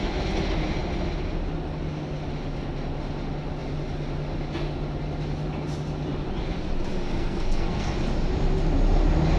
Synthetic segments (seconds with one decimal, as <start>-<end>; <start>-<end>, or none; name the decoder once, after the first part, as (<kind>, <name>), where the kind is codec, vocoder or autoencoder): 6.9-7.9 (codec, SNAC)